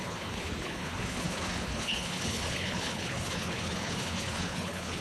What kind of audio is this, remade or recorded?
remade